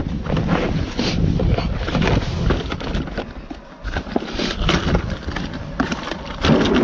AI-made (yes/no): no